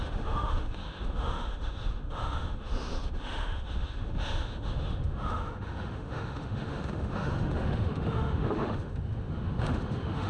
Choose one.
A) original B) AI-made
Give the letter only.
B